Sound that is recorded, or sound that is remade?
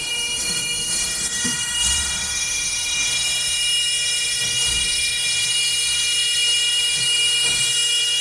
remade